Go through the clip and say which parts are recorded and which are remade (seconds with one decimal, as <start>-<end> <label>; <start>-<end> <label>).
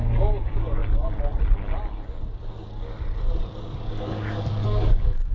0.0-0.8 remade; 0.8-4.0 recorded; 4.0-5.3 remade